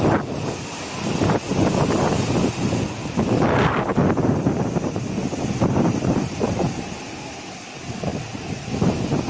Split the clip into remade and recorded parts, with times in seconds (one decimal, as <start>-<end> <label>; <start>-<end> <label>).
0.0-9.3 recorded